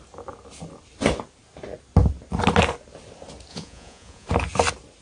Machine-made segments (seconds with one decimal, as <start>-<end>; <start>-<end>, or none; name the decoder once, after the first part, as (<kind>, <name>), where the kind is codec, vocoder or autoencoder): 3.5-4.3 (vocoder, Vocos)